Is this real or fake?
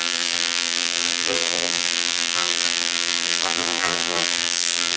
fake